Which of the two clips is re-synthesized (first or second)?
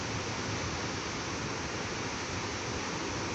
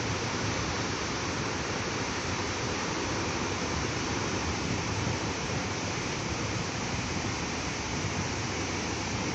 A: second